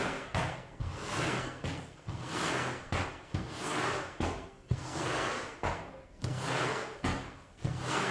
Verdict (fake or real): fake